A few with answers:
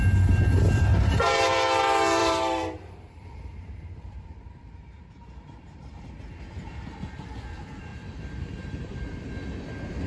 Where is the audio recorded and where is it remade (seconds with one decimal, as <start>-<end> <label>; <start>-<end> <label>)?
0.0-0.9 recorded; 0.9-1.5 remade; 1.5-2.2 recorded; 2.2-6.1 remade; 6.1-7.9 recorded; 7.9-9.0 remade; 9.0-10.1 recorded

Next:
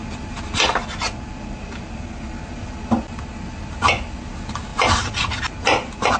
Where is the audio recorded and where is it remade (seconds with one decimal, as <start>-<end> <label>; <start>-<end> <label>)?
0.0-4.7 recorded; 4.7-5.4 remade; 5.4-6.2 recorded

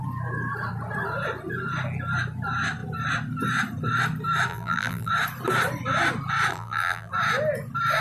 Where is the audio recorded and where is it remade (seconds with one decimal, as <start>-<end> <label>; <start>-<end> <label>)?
0.0-4.5 recorded; 4.5-5.1 remade; 5.1-6.5 recorded; 6.5-7.1 remade; 7.1-8.0 recorded

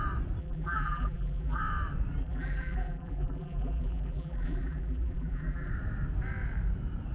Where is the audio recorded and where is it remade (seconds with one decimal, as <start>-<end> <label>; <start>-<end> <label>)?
0.0-0.4 recorded; 0.4-1.6 remade; 1.6-2.2 recorded; 2.2-5.7 remade; 5.7-7.1 recorded